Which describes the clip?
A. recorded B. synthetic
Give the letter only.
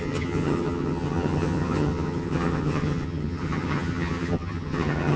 B